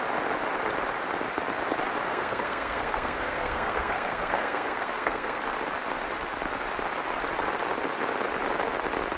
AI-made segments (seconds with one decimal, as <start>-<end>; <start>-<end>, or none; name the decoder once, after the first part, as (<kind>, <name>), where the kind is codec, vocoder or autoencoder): 2.1-5.4 (codec, SNAC)